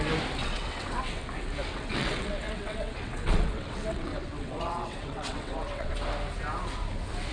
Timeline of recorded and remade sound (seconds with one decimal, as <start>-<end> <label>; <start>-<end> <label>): 0.0-0.4 recorded; 0.4-1.2 remade; 1.2-1.7 recorded; 1.7-5.9 remade; 5.9-7.3 recorded